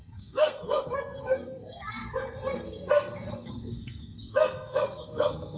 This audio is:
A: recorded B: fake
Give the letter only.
B